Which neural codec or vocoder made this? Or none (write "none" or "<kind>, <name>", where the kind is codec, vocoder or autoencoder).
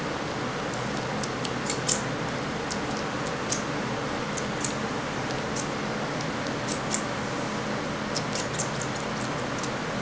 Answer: none